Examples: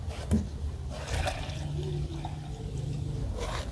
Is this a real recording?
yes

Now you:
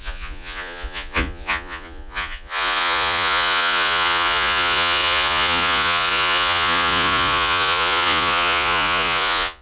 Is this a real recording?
no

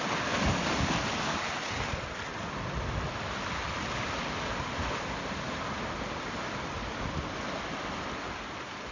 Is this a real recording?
yes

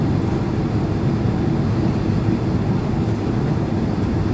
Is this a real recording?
yes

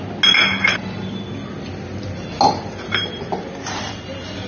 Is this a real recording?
yes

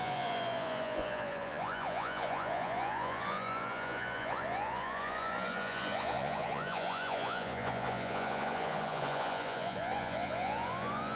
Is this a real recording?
no